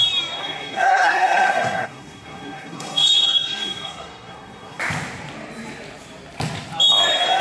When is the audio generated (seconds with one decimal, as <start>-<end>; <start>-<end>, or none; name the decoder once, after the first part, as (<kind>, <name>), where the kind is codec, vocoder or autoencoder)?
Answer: 0.4-4.8 (codec, SNAC)